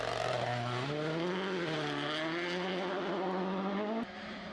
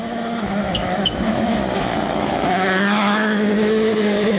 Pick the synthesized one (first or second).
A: second